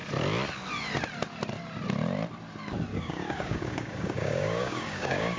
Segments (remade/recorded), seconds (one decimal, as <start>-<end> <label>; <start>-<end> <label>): 0.0-2.9 recorded; 2.9-5.4 remade